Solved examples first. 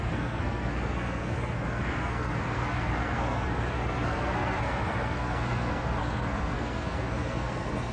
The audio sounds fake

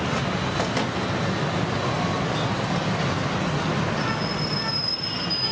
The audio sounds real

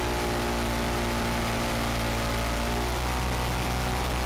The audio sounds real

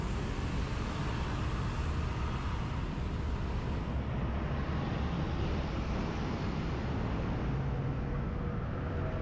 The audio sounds real